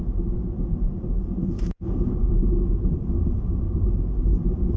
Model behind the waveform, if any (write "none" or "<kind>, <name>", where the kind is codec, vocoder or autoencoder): none